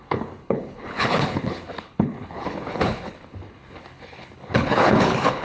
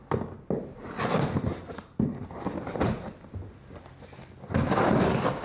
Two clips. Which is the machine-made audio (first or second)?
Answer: first